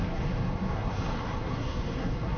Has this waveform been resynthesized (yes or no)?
yes